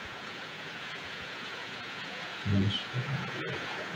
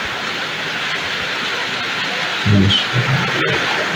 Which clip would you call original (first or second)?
second